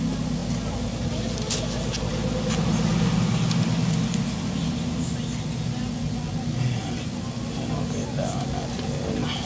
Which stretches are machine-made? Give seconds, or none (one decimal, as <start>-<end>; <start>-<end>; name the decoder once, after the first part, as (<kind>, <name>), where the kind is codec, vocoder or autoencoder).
none